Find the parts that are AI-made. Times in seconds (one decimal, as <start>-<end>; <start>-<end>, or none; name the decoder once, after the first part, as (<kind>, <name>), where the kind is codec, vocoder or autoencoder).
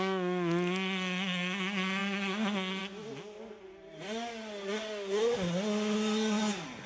none